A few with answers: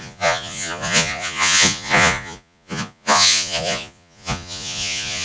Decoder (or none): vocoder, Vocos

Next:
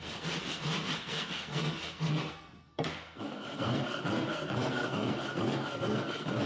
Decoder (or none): codec, SNAC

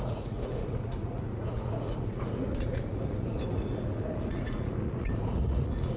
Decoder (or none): vocoder, Vocos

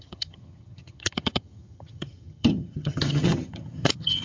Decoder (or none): vocoder, HiFi-GAN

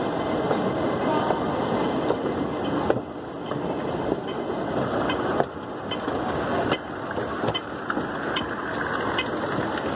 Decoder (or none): none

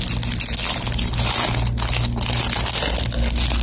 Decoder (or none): none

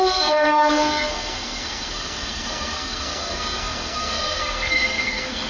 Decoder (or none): codec, SNAC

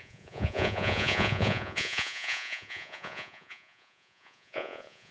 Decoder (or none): vocoder, Vocos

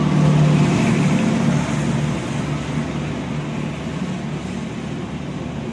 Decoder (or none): none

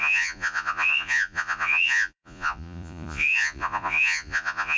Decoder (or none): vocoder, Vocos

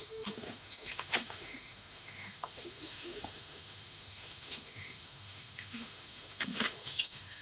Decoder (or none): autoencoder, DAC-VAE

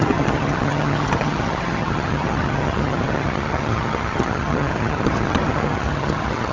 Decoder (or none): vocoder, HiFi-GAN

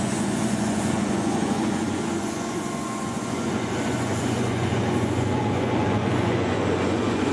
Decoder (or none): vocoder, Vocos